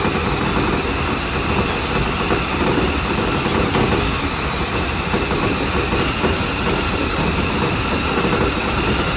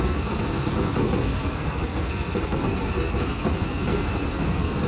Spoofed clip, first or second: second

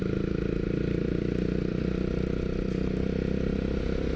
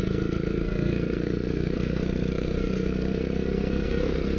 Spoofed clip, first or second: second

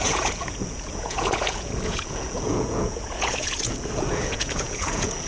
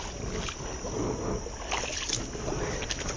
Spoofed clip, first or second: first